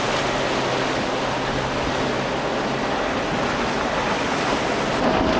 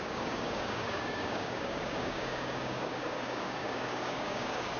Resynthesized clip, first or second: second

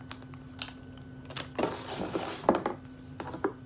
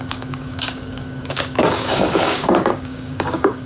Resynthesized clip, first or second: second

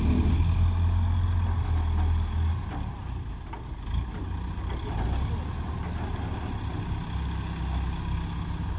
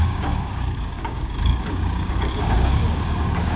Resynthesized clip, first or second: second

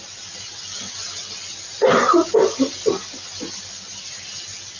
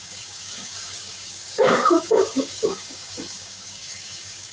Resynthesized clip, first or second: second